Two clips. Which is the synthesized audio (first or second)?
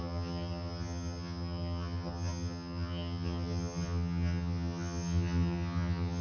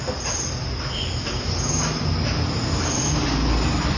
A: first